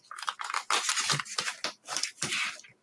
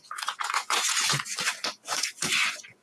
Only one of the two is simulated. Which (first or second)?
second